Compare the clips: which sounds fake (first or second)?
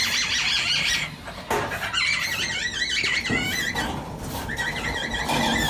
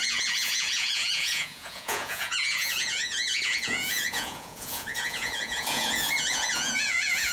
second